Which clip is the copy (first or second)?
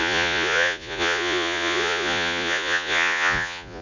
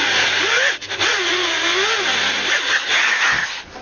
first